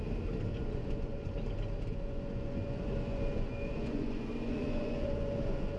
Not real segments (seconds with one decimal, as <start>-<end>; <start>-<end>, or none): 0.5-1.3; 1.9-5.8